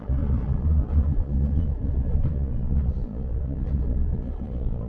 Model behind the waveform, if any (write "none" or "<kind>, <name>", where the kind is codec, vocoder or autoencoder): vocoder, Vocos